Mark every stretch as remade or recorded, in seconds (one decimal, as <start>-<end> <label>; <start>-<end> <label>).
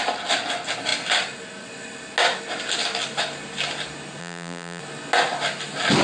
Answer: 0.0-4.2 recorded; 4.2-4.8 remade; 4.8-6.0 recorded